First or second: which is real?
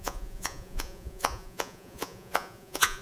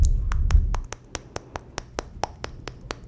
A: second